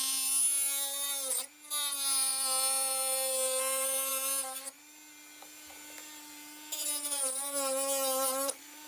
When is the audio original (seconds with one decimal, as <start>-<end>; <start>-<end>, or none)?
0.0-8.9